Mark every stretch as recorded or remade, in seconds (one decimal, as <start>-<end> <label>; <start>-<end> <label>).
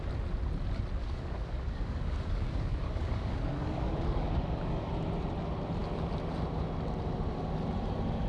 0.0-1.0 recorded; 1.0-4.9 remade; 4.9-8.3 recorded